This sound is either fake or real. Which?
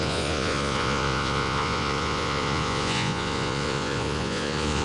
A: fake